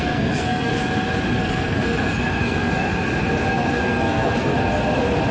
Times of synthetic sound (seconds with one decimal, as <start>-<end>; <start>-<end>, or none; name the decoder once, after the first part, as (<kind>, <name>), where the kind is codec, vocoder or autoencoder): 0.0-0.7 (codec, SNAC); 1.4-2.9; 3.5-4.5